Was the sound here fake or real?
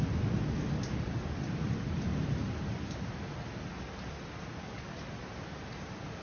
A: real